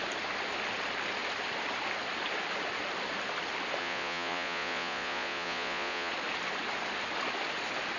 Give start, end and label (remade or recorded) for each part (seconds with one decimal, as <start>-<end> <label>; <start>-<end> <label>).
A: 0.0-3.8 recorded; 3.8-6.1 remade; 6.1-8.0 recorded